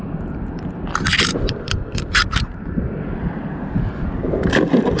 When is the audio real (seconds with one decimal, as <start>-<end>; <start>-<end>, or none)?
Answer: 0.0-1.3; 2.8-5.0